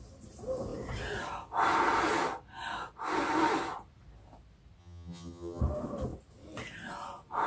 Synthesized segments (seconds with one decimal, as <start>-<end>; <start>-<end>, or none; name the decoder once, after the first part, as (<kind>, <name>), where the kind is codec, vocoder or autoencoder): 4.8-5.6 (vocoder, HiFi-GAN)